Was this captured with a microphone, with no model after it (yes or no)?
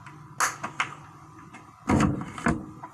yes